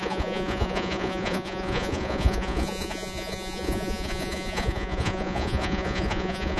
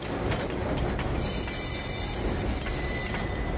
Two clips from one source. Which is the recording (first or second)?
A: second